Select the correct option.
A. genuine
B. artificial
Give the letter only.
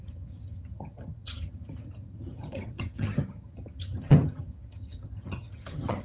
B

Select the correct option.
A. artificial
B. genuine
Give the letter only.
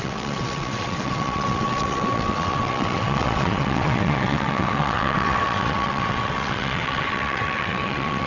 A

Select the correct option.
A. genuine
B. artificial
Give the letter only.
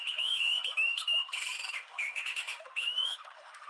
B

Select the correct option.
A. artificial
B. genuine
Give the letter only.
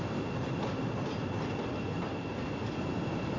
B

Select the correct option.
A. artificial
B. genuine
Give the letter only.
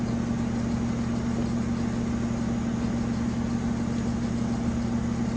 B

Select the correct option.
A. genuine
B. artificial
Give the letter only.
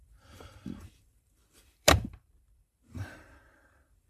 B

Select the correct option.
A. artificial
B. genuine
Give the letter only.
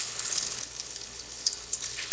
A